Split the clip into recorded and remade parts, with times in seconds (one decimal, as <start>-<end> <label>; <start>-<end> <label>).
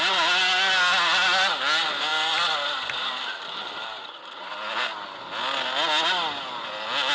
0.0-7.1 recorded